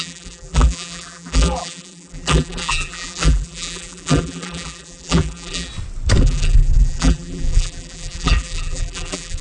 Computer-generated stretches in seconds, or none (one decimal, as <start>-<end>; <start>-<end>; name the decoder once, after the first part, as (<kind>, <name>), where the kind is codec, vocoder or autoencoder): 0.0-5.7 (vocoder, BigVGAN v2); 6.2-9.4